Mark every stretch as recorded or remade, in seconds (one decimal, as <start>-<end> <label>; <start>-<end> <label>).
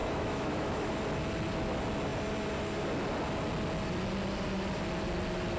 0.0-0.9 remade; 0.9-5.6 recorded